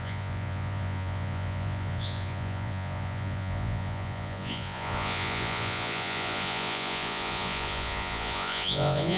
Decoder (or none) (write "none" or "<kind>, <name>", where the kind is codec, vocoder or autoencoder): vocoder, Vocos